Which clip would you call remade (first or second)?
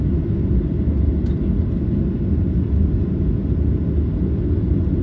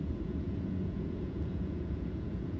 second